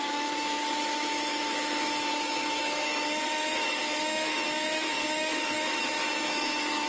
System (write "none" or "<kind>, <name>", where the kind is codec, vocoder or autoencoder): autoencoder, DAC-VAE